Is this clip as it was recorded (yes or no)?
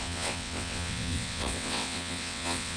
no